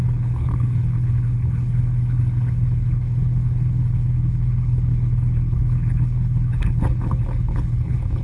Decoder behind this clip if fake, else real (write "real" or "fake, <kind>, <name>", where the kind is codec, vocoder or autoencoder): fake, codec, HILCodec